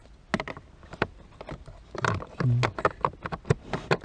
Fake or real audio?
real